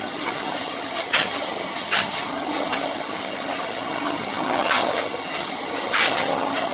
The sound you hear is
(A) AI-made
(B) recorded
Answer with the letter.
A